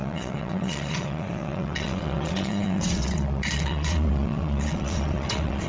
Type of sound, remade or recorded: remade